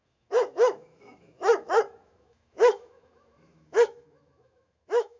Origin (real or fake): fake